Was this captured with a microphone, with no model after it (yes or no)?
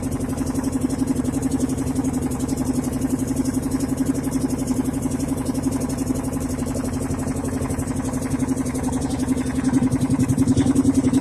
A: no